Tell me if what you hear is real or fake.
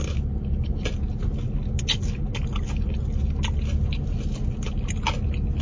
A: real